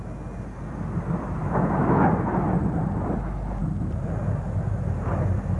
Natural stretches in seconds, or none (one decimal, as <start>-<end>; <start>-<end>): 0.0-1.4; 2.1-5.6